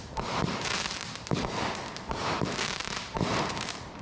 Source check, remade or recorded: remade